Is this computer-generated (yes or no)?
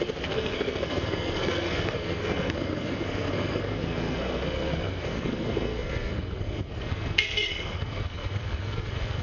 yes